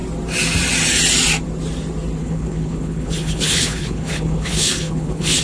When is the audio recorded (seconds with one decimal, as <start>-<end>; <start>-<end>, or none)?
0.0-2.2

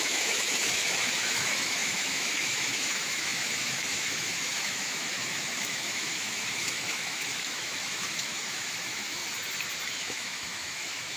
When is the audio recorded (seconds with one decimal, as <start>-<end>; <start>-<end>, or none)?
9.2-9.9

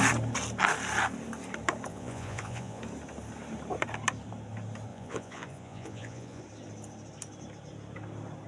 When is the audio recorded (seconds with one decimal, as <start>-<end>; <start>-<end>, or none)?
0.0-1.9; 2.8-4.9; 6.4-8.5

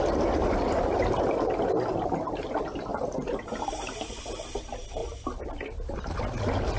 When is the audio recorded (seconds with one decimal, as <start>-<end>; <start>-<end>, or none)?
0.0-2.9; 4.2-5.0; 6.2-6.8